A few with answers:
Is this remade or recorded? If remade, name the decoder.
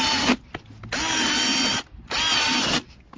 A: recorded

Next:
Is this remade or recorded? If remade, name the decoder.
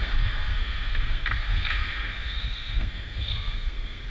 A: remade, codec, SNAC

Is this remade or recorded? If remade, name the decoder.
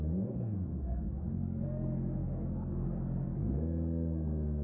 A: remade, codec, SNAC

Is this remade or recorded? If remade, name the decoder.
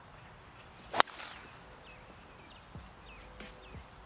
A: recorded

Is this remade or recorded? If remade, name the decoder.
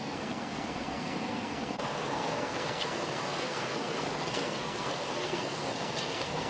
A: remade, codec, SNAC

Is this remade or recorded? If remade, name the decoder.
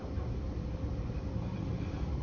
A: recorded